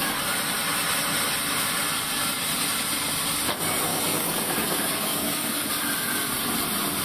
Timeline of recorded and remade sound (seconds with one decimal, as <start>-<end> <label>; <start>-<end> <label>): 0.0-3.9 recorded; 3.9-5.7 remade; 5.7-7.0 recorded